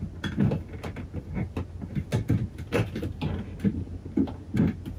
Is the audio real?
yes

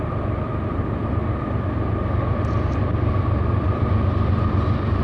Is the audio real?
no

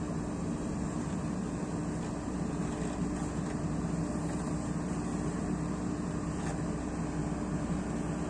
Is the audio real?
yes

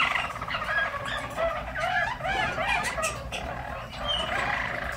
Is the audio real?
no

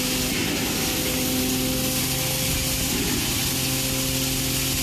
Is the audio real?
yes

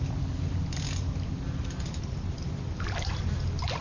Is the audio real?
no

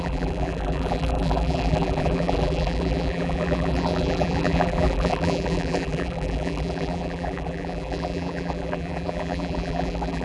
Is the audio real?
no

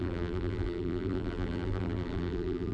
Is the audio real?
no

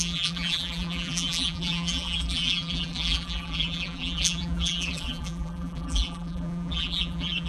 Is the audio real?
no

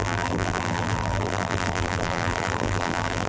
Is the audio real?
no